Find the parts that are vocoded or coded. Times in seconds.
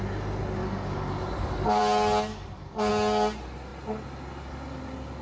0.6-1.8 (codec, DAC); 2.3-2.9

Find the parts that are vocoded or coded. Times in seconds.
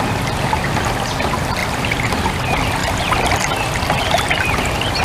1.6-2.3 (vocoder, BigVGAN v2); 2.8-5.0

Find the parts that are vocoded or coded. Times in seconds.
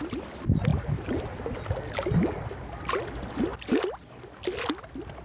0.7-1.4 (vocoder, BigVGAN v2)